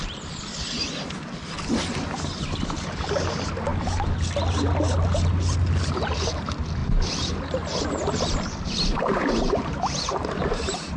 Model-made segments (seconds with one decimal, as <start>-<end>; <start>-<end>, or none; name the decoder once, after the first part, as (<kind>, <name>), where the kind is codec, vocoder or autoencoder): 8.9-11.0 (vocoder, BigVGAN v2)